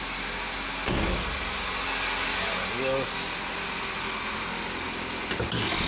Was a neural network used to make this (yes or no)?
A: no